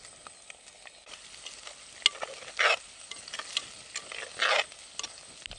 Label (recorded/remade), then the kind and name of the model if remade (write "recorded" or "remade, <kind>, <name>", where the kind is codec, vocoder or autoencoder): recorded